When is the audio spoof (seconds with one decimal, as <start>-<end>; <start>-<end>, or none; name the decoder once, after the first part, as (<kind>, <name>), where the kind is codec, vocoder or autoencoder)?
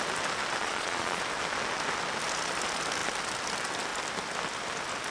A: 0.6-1.2 (vocoder, Vocos)